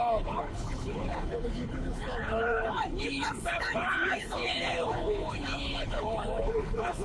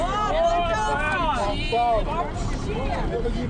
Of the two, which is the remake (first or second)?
first